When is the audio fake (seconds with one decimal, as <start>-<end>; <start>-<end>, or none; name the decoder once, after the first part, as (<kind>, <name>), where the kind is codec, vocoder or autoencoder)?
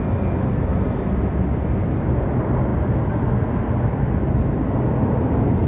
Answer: none